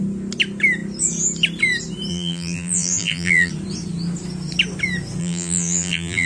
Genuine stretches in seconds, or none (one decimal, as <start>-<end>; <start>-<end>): 0.0-2.1; 3.5-5.2